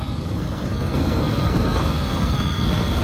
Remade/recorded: remade